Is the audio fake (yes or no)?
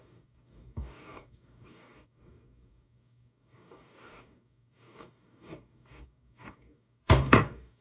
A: yes